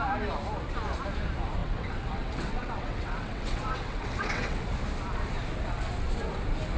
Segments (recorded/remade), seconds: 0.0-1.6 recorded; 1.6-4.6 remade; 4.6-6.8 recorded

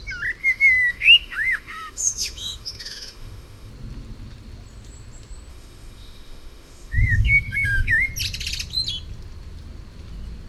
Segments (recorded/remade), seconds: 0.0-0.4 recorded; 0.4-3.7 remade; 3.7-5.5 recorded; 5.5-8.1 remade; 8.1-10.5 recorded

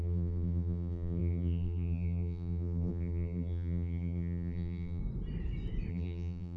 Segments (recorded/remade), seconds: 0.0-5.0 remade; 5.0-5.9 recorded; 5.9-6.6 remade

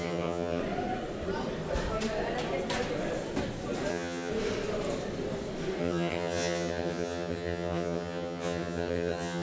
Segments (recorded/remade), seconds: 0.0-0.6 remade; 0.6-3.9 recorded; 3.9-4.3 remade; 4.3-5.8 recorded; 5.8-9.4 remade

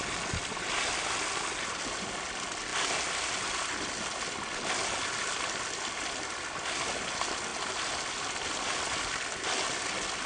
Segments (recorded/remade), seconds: 0.0-10.3 recorded